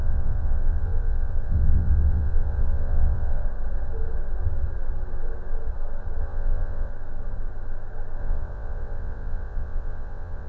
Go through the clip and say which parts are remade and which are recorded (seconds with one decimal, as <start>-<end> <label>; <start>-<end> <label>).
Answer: 0.0-3.4 remade; 3.4-6.2 recorded; 6.2-6.9 remade; 6.9-8.2 recorded; 8.2-10.5 remade